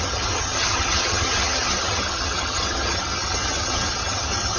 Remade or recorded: remade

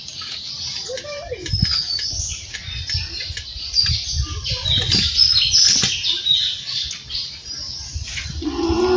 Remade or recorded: recorded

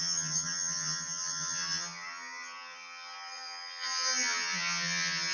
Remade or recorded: remade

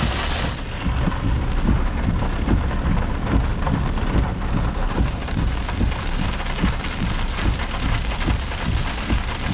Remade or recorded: recorded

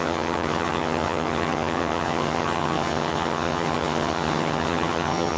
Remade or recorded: remade